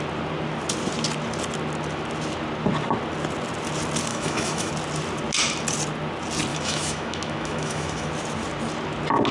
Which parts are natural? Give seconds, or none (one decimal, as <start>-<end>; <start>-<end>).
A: 0.0-4.1; 4.7-6.5; 8.1-9.3